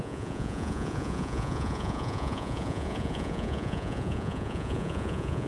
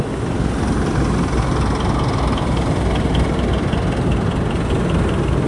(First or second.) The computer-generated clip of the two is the first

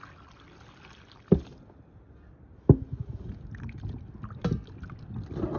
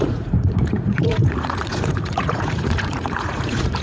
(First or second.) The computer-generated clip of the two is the second